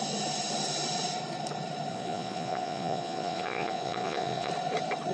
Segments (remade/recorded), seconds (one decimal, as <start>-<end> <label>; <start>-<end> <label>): 0.0-1.9 recorded; 1.9-4.5 remade; 4.5-5.1 recorded